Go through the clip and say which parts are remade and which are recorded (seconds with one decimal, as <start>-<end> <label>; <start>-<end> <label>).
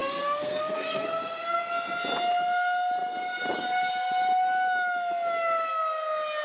0.0-1.6 remade; 1.6-6.4 recorded